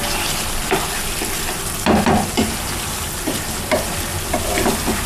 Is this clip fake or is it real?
real